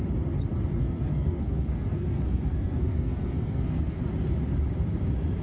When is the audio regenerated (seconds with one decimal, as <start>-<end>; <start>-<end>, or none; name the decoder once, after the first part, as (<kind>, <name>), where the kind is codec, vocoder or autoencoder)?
0.8-4.0 (codec, SNAC)